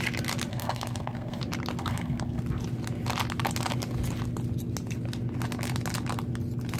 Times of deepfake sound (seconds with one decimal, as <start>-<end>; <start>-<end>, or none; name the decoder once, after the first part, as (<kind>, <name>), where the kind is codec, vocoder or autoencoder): 0.5-1.4 (codec, SNAC); 1.8-2.4